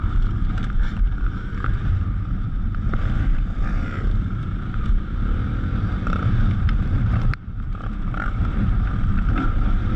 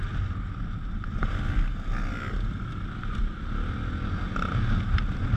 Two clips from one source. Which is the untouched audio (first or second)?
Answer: second